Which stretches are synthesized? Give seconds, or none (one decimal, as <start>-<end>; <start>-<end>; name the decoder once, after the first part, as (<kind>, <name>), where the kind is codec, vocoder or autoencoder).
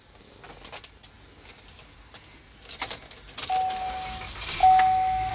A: 4.6-5.3 (autoencoder, DAC-VAE)